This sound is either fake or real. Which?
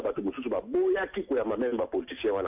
real